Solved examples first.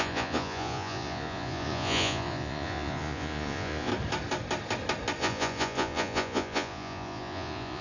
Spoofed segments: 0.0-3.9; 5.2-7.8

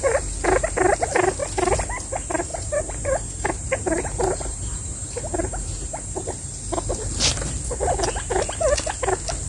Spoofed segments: 2.5-6.2

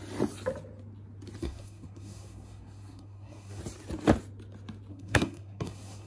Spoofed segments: 1.4-3.6; 4.9-6.1

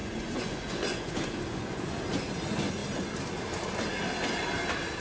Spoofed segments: 0.0-2.0

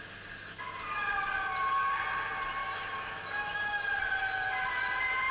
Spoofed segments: 2.6-4.0